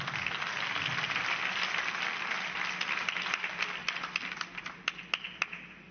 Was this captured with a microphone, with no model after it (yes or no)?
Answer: yes